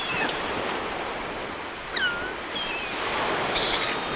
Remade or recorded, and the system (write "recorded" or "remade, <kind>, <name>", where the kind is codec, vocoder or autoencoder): recorded